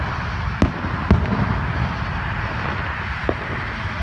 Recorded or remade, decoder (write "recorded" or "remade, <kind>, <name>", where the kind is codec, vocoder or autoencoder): recorded